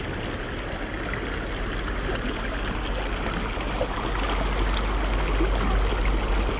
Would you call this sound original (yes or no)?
yes